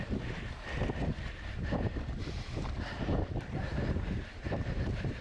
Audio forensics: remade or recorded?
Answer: remade